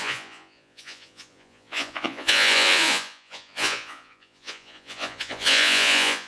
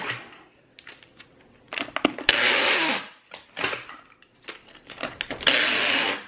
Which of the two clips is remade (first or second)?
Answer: first